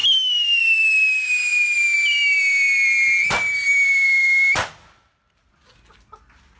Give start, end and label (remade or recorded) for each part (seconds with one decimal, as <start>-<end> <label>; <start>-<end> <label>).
0.0-6.6 recorded